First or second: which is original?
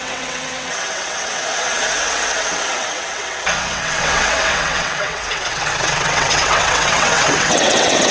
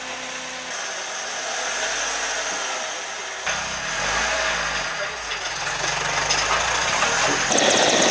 second